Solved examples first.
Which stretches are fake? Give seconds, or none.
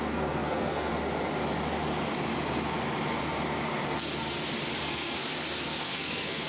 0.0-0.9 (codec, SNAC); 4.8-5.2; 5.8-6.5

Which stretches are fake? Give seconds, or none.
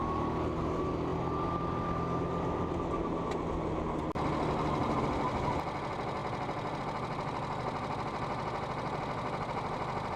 none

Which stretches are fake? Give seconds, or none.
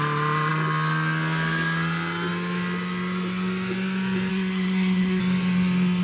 4.3-5.2 (codec, SNAC)